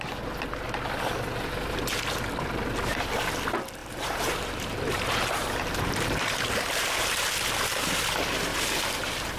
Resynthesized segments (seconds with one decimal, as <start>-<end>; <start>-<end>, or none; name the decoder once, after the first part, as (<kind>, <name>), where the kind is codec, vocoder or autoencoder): 3.8-7.3 (vocoder, BigVGAN v2); 8.5-9.4